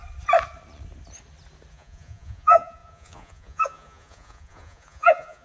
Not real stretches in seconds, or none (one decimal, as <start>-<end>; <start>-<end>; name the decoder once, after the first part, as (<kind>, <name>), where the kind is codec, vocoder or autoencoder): 1.7-5.4 (vocoder, Vocos)